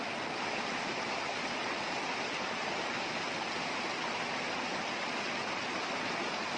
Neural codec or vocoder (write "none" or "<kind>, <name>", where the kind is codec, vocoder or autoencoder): none